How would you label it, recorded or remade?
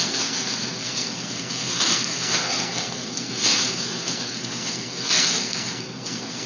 remade